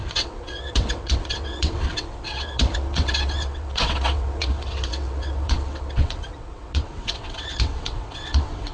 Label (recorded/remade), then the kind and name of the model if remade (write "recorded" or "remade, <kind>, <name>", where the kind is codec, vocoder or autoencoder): remade, vocoder, WaveNeXt